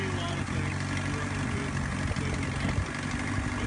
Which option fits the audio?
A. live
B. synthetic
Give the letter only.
A